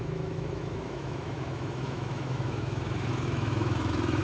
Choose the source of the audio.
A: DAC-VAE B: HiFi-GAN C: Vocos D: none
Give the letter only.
A